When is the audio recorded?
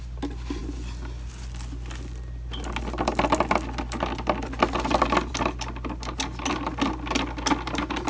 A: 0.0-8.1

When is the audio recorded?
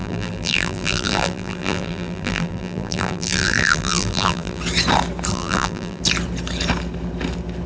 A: 4.6-5.3; 6.0-7.7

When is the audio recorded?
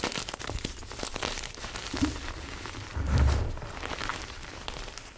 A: 0.0-5.2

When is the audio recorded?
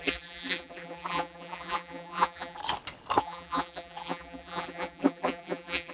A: 2.6-3.2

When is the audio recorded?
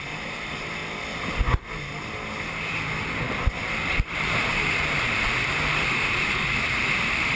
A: 0.8-3.9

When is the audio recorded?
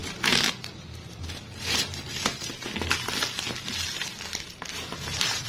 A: 2.5-4.5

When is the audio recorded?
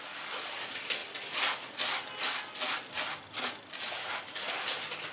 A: 0.0-5.1